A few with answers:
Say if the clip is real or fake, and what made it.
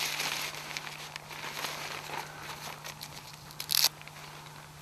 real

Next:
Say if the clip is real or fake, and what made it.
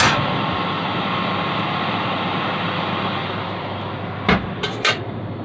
real